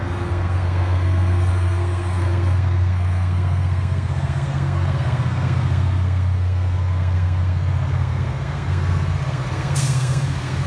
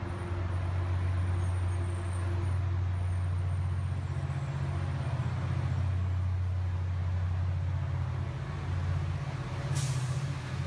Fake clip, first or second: first